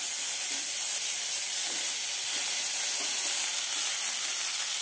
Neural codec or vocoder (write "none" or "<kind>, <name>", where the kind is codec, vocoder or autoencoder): none